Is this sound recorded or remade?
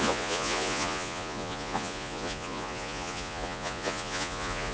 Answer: remade